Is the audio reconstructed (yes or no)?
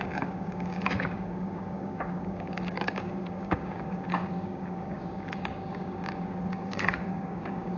yes